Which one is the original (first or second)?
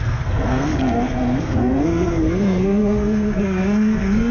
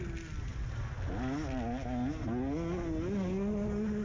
second